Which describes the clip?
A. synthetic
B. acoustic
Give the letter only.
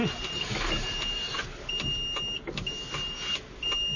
B